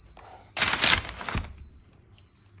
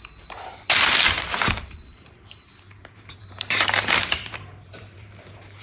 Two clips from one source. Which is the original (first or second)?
first